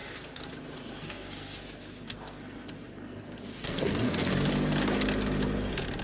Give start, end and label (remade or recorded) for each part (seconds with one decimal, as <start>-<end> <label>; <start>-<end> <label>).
0.0-0.5 remade; 0.5-0.9 recorded; 0.9-4.3 remade; 4.3-6.0 recorded